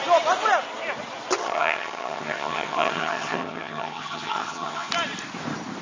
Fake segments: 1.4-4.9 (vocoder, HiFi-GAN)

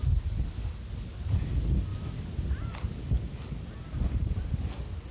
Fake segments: none

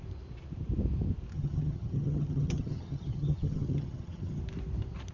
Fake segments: 1.3-4.4 (vocoder, HiFi-GAN)